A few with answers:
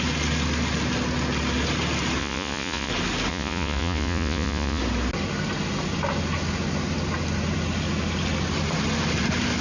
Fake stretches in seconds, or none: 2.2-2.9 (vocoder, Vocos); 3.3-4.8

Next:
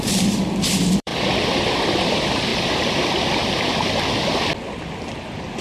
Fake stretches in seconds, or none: 0.0-1.1 (vocoder, BigVGAN v2); 1.6-2.5

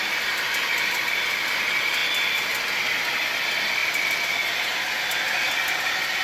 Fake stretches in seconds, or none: none

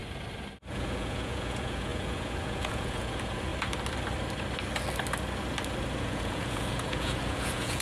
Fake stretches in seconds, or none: 0.7-3.5 (vocoder, Vocos); 6.0-7.8

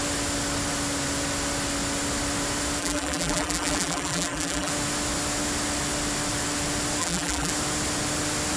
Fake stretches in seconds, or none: 2.8-4.7 (vocoder, BigVGAN v2); 7.0-7.5